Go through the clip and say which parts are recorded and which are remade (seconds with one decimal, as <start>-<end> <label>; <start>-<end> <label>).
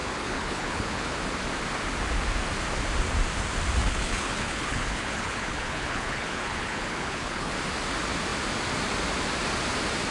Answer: 0.0-1.2 remade; 1.2-3.8 recorded; 3.8-7.5 remade; 7.5-10.1 recorded